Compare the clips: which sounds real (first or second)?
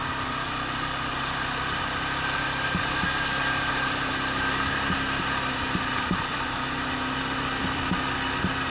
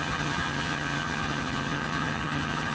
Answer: first